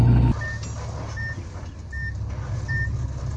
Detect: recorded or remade recorded